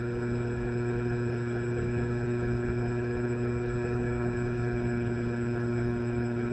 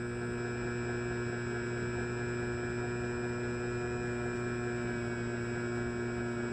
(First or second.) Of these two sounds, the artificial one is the first